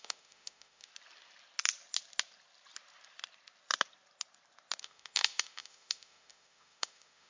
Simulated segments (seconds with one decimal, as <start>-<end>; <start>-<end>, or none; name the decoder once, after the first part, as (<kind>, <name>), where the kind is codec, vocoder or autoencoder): 0.0-0.9 (autoencoder, DAC-VAE); 4.8-7.3